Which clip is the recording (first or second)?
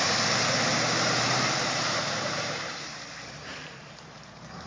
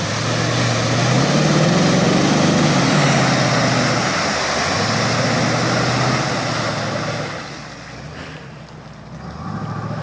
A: second